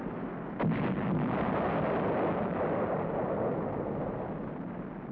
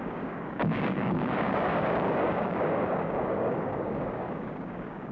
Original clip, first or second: first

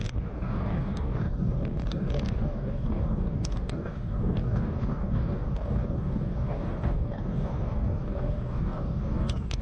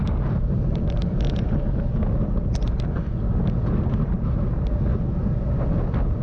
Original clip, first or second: second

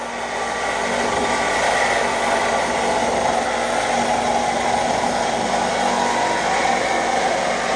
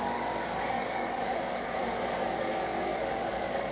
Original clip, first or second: first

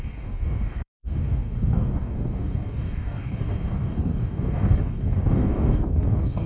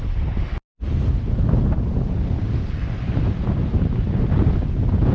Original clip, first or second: second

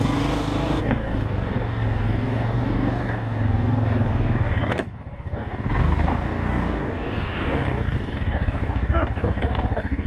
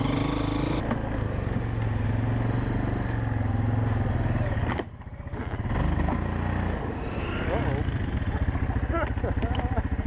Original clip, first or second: second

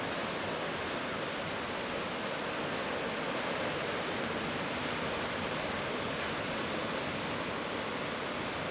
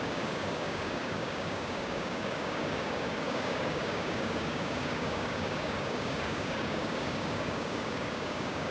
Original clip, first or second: first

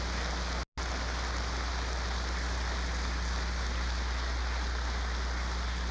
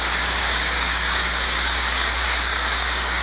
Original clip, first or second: first